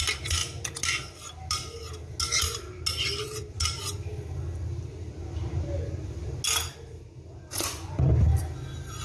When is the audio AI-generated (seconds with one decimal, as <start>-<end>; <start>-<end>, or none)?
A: 7.5-8.0